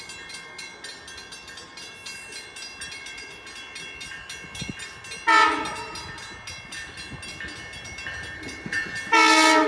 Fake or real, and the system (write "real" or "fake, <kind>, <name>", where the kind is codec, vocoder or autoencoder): real